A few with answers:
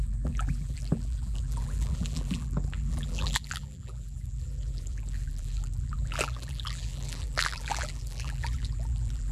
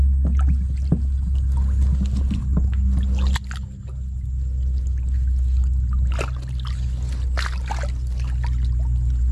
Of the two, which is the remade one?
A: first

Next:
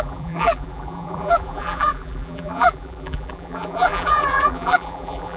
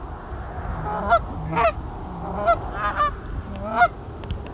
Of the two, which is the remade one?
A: first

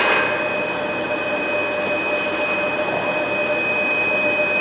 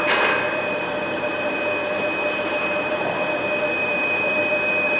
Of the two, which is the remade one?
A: second